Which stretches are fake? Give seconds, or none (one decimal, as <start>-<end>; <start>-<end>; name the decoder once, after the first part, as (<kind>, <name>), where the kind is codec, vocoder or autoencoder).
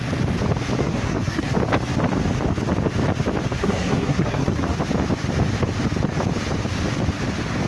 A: 0.8-1.5 (codec, SNAC); 3.6-4.6